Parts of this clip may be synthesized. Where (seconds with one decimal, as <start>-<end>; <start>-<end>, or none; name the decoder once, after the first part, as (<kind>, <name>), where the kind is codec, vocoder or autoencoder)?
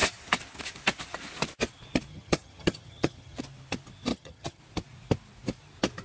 2.1-3.4 (vocoder, HiFi-GAN); 4.1-4.6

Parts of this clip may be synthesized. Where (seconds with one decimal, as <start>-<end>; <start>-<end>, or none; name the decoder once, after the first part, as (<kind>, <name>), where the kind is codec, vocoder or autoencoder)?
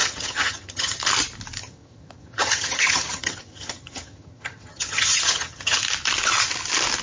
0.0-1.0 (vocoder, HiFi-GAN); 1.6-5.8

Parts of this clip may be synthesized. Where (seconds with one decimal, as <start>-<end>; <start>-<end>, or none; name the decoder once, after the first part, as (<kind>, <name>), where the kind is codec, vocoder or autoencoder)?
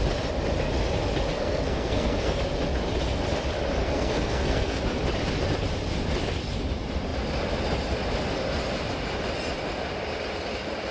1.3-2.4 (codec, SNAC); 3.8-4.8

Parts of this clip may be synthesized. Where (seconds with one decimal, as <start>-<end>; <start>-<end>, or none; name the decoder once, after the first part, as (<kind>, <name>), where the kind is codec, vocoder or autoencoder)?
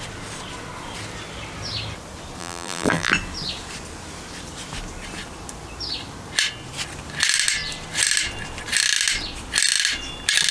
2.4-3.1 (vocoder, BigVGAN v2)